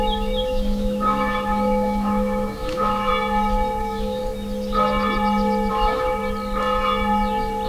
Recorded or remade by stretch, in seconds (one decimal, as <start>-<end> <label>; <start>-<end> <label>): 0.0-3.1 remade; 3.1-3.8 recorded; 3.8-4.2 remade; 4.2-5.7 recorded; 5.7-6.2 remade; 6.2-7.7 recorded